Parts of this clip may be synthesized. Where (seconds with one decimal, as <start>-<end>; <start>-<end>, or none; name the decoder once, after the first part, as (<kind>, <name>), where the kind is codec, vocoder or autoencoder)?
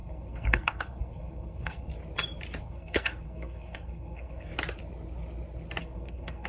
0.0-1.9 (codec, SNAC); 2.6-4.5; 5.8-6.5